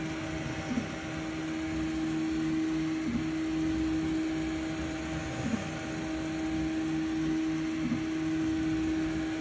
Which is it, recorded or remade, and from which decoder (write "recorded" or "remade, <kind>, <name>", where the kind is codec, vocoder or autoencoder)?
recorded